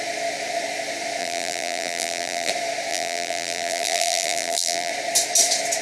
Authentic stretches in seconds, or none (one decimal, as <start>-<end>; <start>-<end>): 0.0-1.2; 2.5-2.9; 4.9-5.8